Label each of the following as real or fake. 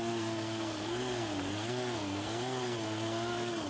fake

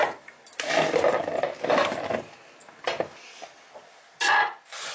real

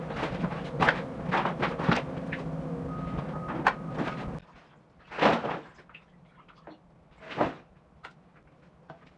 real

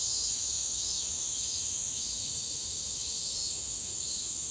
fake